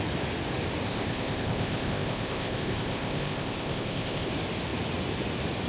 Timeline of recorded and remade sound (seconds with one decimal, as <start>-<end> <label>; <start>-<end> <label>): 0.0-0.9 recorded; 0.9-4.3 remade; 4.3-5.7 recorded